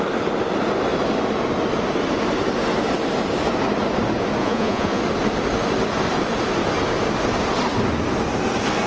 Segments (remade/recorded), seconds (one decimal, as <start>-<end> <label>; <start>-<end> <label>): 0.0-4.4 recorded; 4.4-5.0 remade; 5.0-8.9 recorded